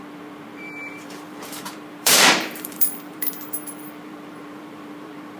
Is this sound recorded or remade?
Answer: remade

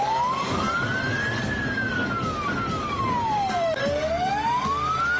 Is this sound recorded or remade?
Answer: remade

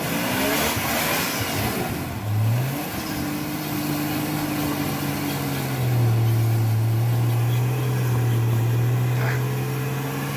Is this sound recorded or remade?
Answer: recorded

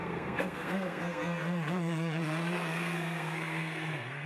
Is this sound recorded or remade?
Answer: remade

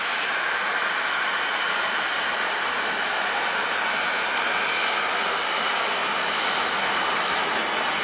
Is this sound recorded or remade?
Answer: recorded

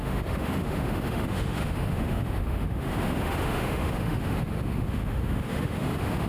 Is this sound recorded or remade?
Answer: remade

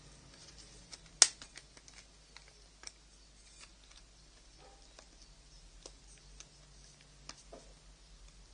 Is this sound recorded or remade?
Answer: recorded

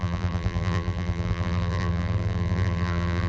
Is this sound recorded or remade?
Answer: remade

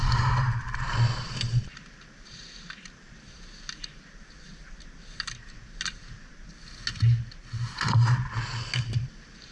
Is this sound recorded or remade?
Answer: recorded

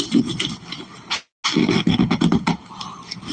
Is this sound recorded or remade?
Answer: recorded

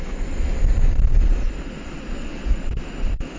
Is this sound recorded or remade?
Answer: recorded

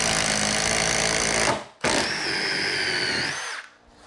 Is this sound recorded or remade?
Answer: recorded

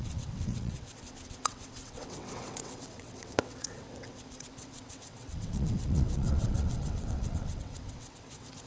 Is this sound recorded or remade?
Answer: remade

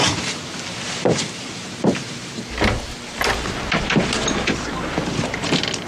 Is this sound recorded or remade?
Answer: remade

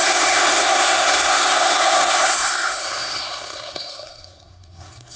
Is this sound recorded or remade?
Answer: remade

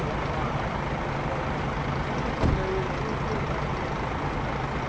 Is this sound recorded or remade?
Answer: recorded